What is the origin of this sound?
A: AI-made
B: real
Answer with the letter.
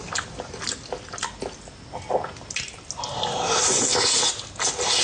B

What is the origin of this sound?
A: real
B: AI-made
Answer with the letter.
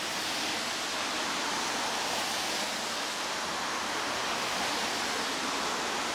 B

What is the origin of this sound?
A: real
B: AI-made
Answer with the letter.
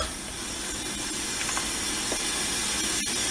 A